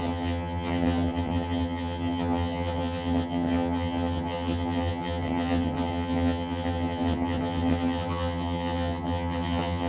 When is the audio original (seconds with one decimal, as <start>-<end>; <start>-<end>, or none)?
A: none